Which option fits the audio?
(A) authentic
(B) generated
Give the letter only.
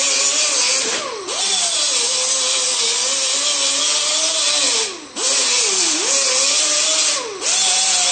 A